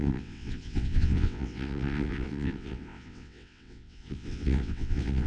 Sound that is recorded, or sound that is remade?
remade